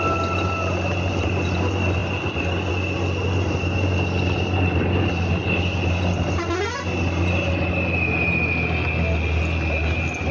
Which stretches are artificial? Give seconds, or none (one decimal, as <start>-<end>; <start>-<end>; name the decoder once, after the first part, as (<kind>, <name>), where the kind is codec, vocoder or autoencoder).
none